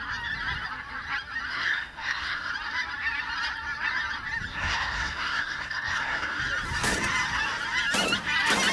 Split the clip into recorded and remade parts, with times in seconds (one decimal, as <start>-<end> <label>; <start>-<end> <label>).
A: 0.0-1.5 recorded; 1.5-2.5 remade; 2.5-4.5 recorded; 4.5-6.4 remade; 6.4-8.7 recorded